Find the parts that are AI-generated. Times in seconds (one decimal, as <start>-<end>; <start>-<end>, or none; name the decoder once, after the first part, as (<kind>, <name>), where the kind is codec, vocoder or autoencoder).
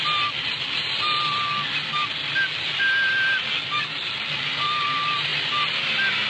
none